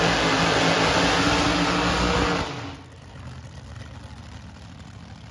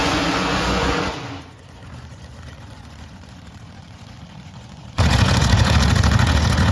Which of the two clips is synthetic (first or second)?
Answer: second